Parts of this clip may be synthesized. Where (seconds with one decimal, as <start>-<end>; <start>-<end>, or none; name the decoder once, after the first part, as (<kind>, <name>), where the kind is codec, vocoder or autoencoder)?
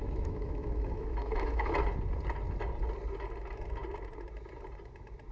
0.0-1.7 (autoencoder, DAC-VAE)